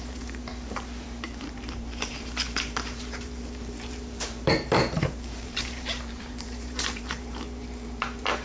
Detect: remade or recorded remade